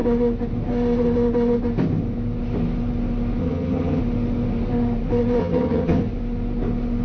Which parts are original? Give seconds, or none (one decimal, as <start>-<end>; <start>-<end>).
0.0-3.4; 4.0-5.4; 6.0-7.0